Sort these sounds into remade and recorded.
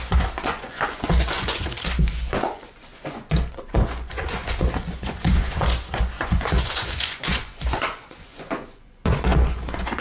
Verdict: remade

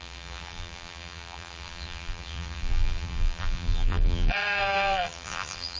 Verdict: remade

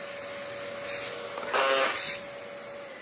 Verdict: recorded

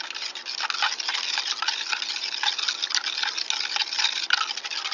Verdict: recorded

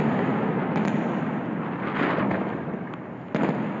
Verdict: recorded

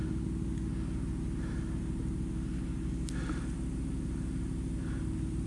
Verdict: recorded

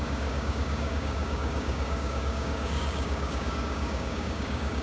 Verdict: remade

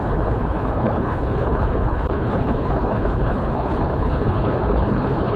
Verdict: remade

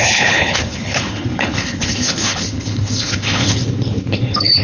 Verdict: remade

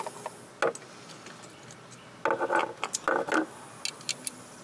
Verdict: recorded